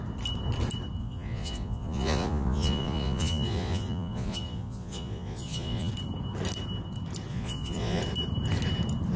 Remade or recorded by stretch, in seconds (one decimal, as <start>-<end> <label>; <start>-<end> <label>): 0.0-1.0 recorded; 1.0-5.9 remade; 5.9-7.3 recorded; 7.3-8.0 remade; 8.0-9.2 recorded